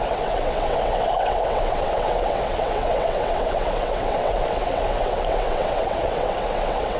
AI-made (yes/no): yes